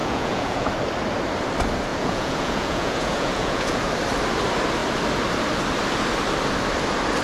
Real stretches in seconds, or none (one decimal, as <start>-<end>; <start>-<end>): 0.7-1.9; 3.9-7.2